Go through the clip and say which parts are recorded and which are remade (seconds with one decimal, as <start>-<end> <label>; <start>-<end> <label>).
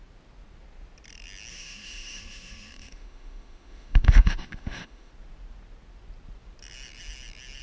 0.0-1.5 recorded; 1.5-5.1 remade; 5.1-7.6 recorded